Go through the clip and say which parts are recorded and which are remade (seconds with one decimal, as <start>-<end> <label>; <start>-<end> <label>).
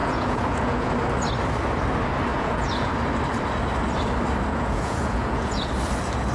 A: 0.0-0.9 remade; 0.9-2.3 recorded; 2.3-2.9 remade; 2.9-4.5 recorded; 4.5-5.7 remade; 5.7-6.3 recorded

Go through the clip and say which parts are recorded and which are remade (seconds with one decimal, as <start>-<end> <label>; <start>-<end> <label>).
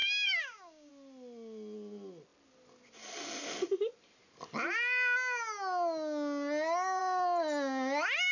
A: 0.0-0.9 remade; 0.9-8.3 recorded